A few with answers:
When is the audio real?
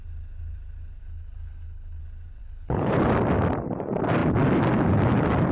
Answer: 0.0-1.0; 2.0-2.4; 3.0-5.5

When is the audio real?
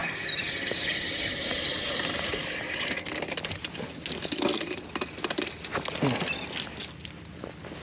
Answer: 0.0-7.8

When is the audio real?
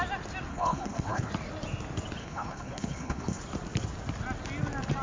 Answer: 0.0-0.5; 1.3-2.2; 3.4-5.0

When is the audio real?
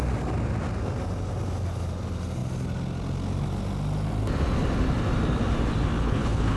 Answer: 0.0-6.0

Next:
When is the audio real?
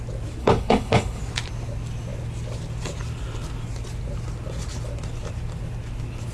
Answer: 0.0-0.4; 1.2-6.3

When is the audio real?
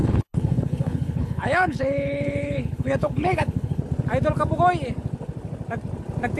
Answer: 3.8-6.4